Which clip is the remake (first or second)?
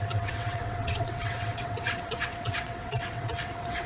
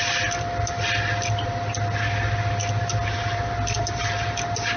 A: first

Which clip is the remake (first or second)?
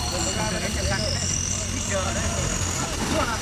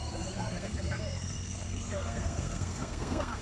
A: second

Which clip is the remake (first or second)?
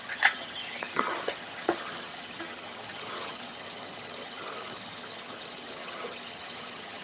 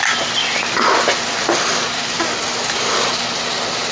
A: first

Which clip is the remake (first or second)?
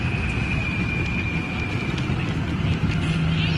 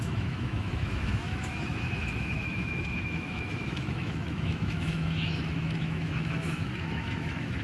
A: second